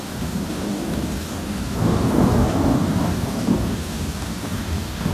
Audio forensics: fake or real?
fake